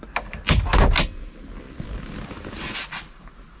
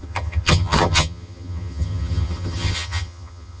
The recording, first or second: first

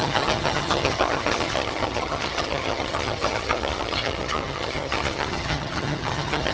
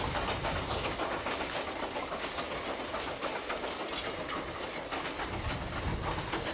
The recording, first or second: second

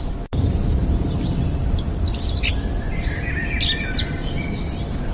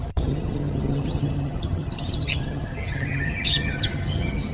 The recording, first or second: first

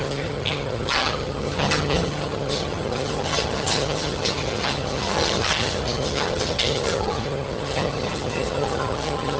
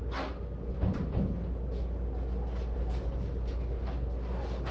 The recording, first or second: second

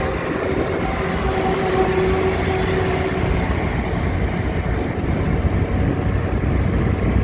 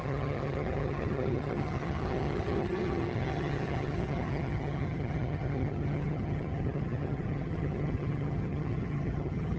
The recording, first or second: first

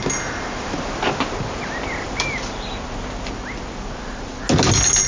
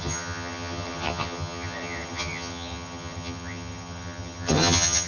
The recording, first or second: first